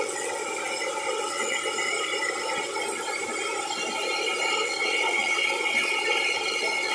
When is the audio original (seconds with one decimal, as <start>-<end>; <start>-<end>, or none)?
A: 0.4-1.1; 1.6-4.5

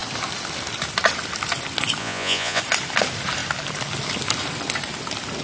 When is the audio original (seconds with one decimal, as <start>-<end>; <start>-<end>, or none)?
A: 0.0-2.0; 2.6-5.4

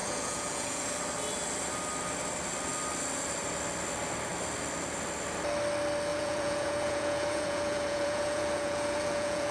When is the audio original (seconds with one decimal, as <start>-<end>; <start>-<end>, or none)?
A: 0.8-6.1